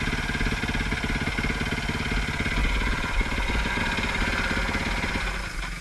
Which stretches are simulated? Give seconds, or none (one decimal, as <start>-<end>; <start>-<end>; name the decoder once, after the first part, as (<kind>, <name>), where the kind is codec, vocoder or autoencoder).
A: 2.6-3.8 (vocoder, Vocos)